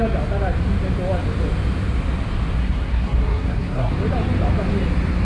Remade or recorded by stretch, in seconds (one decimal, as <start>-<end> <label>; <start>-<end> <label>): 0.0-2.6 recorded; 2.6-3.9 remade; 3.9-5.2 recorded